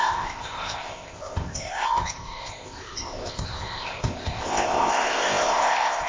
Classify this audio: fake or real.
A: fake